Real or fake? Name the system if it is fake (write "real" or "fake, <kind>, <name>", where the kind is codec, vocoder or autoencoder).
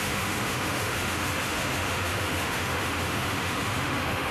fake, autoencoder, DAC-VAE